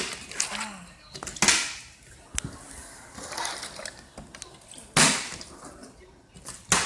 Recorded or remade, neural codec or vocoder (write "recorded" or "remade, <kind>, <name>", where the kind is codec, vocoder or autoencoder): recorded